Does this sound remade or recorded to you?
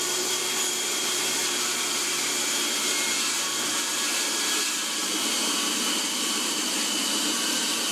remade